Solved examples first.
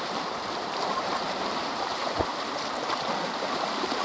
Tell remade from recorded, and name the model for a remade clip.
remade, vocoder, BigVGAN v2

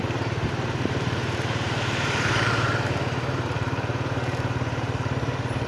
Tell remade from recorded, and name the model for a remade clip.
remade, vocoder, BigVGAN v2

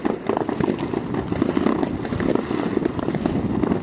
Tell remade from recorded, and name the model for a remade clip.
recorded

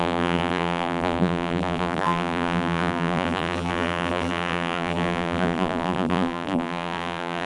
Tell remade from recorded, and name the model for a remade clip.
remade, vocoder, BigVGAN v2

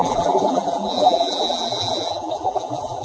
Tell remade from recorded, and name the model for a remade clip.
remade, vocoder, BigVGAN v2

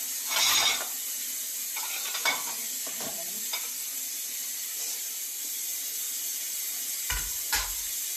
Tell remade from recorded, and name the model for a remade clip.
recorded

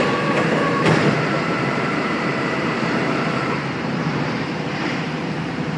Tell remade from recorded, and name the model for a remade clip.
remade, vocoder, BigVGAN v2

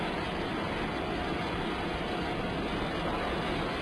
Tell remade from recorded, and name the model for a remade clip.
recorded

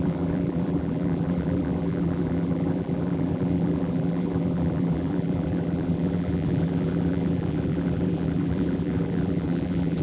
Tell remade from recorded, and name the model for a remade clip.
remade, vocoder, BigVGAN v2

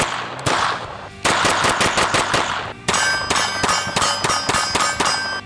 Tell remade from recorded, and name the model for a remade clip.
recorded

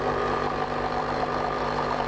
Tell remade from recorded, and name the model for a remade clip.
remade, vocoder, BigVGAN v2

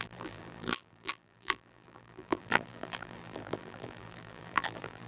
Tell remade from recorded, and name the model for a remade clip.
remade, vocoder, BigVGAN v2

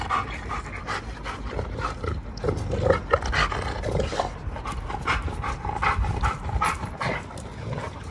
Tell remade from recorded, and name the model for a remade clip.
recorded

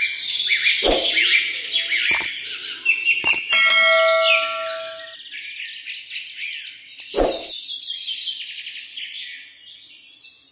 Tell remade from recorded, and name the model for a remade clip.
recorded